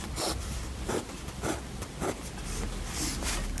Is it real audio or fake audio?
real